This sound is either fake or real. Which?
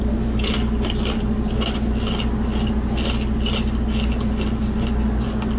real